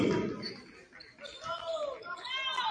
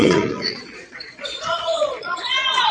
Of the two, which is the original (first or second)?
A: first